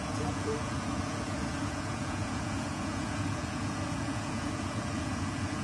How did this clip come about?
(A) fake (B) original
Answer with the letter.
A